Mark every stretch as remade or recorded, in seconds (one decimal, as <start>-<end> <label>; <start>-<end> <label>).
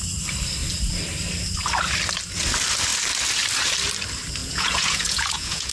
0.0-4.4 recorded; 4.4-5.7 remade